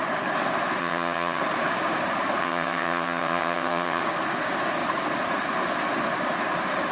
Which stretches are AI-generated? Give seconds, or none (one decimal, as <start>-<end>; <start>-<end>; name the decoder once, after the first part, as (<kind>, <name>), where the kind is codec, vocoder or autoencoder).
0.8-1.4 (vocoder, HiFi-GAN); 2.4-4.0